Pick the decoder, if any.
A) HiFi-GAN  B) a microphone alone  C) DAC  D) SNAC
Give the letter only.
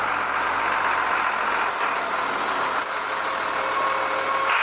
B